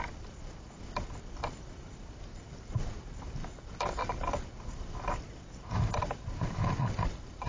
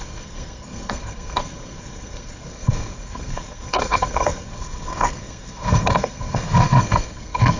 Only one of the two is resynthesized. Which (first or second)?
second